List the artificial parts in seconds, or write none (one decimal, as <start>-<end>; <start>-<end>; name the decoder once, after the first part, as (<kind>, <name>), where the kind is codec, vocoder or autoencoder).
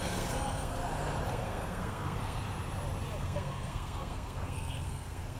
0.0-0.8 (codec, SNAC); 1.3-2.4; 3.2-5.4